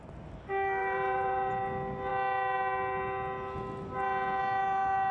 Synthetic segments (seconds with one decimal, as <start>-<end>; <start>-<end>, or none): 0.8-1.5